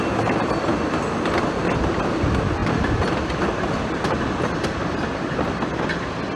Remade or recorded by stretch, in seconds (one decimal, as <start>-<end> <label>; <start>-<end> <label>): 0.0-6.4 recorded